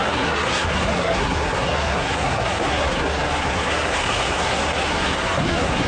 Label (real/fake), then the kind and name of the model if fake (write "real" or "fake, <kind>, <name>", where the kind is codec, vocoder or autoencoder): fake, codec, SNAC